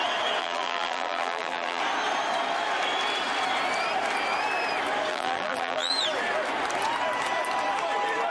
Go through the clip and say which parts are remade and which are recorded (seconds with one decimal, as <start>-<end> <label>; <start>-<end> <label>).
0.0-0.4 recorded; 0.4-1.8 remade; 1.8-5.1 recorded; 5.1-5.9 remade; 5.9-8.3 recorded